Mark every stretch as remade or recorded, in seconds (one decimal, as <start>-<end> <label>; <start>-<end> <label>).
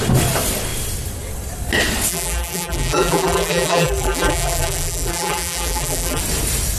0.0-2.1 recorded; 2.1-6.2 remade; 6.2-6.8 recorded